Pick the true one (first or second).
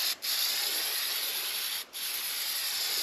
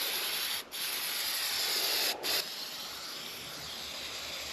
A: second